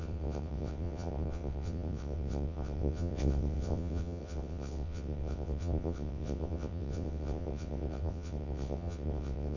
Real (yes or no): no